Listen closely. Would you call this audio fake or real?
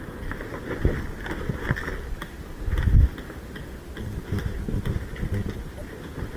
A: real